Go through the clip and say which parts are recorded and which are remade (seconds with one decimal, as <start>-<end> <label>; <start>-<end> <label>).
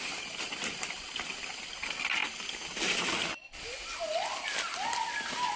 0.0-5.6 recorded